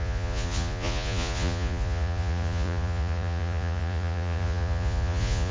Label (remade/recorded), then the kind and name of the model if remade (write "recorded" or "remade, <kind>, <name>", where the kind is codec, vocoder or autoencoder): remade, vocoder, Vocos